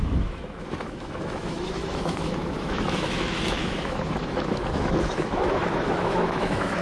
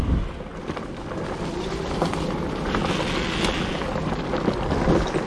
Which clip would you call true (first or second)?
second